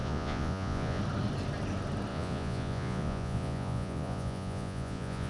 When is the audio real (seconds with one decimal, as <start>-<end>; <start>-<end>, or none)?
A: 1.0-2.1